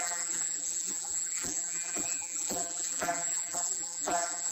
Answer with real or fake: fake